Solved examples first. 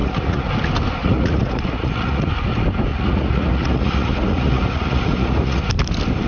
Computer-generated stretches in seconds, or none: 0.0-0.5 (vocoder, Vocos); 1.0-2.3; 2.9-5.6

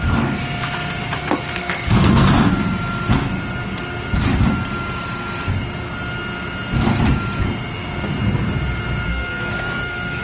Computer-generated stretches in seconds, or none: 1.6-2.3 (codec, SNAC); 9.1-10.2

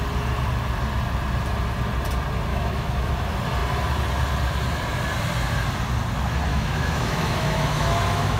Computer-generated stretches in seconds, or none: 2.5-3.1 (autoencoder, DAC-VAE); 6.5-8.4

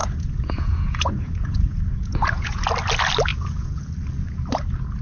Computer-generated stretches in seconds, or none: 0.0-2.6 (vocoder, Vocos); 3.3-3.9

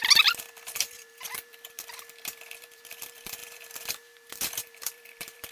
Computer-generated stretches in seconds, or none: 0.0-5.5 (vocoder, BigVGAN v2)

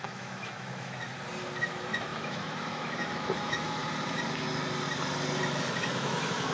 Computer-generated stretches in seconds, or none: 0.0-1.1 (autoencoder, DAC-VAE); 1.6-3.8; 5.6-6.5